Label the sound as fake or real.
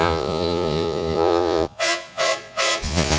fake